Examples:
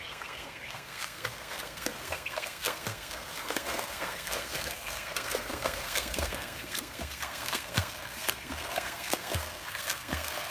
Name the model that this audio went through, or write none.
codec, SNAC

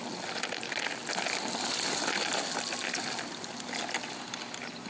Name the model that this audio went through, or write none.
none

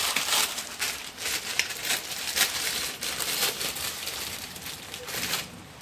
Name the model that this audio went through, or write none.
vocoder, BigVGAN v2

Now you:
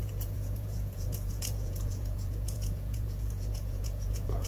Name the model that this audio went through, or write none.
vocoder, Vocos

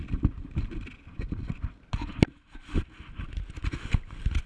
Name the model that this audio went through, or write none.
none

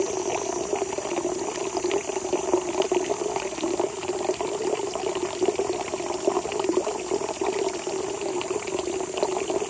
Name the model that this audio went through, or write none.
none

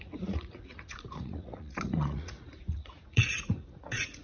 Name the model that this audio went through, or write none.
vocoder, Vocos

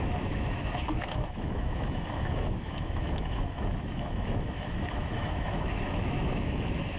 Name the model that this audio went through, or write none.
autoencoder, DAC-VAE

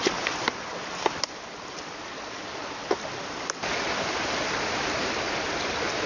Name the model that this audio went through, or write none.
none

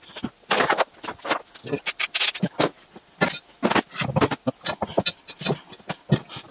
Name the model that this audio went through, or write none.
none